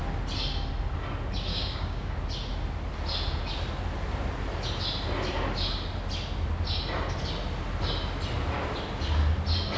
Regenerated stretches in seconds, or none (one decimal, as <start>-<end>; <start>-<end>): 1.5-2.1